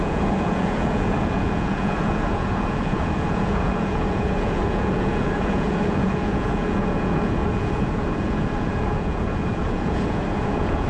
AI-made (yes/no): yes